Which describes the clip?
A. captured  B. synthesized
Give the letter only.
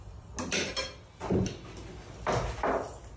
A